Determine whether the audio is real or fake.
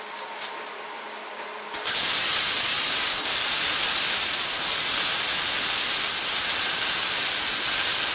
real